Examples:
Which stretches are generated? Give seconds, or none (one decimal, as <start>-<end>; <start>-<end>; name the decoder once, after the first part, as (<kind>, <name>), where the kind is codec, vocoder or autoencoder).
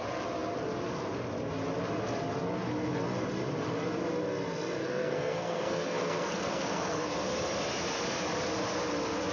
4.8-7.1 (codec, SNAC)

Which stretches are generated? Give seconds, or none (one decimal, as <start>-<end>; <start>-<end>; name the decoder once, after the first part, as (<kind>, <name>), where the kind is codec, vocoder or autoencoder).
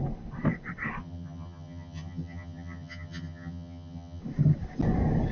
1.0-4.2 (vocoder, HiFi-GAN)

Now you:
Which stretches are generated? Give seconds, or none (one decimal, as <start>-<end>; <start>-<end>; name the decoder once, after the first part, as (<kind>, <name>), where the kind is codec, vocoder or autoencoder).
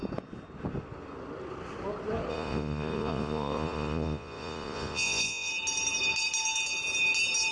2.3-5.5 (vocoder, Vocos)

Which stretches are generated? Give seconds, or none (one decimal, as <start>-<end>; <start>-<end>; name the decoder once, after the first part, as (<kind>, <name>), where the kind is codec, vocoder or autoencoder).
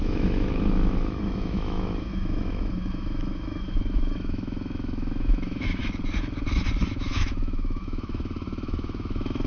0.0-5.8 (autoencoder, DAC-VAE); 6.9-9.5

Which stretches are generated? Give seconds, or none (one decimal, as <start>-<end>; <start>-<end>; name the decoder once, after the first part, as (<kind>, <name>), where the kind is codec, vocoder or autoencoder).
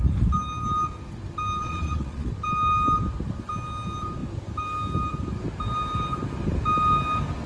1.6-2.3 (vocoder, Vocos)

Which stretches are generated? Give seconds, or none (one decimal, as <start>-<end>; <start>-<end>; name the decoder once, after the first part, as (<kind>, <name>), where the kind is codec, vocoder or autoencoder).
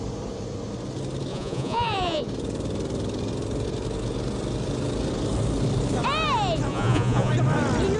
1.3-2.2 (vocoder, Vocos); 6.7-7.3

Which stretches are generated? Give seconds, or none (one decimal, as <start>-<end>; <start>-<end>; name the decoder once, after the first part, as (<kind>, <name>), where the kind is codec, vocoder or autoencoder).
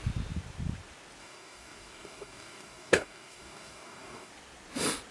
1.2-4.3 (codec, DAC)